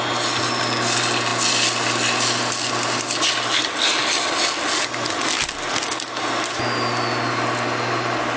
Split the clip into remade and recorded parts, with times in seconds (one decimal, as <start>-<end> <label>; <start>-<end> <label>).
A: 0.0-8.4 recorded